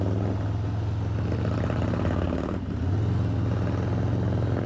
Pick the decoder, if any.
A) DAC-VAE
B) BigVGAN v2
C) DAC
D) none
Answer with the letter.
D